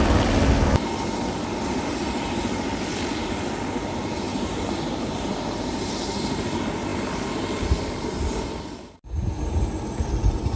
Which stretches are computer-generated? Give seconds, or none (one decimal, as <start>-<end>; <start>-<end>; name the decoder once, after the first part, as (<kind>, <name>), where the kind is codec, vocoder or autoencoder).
4.3-5.9 (vocoder, BigVGAN v2)